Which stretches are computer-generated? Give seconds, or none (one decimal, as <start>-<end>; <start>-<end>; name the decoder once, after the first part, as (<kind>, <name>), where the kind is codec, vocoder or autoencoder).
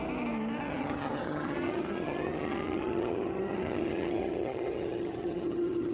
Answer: 0.7-5.9 (vocoder, HiFi-GAN)